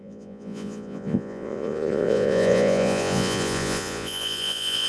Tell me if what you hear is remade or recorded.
remade